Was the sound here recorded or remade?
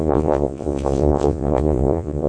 remade